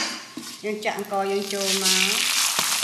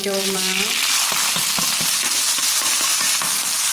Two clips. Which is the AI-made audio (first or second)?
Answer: second